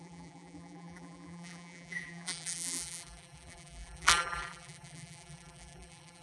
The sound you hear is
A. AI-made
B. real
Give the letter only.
A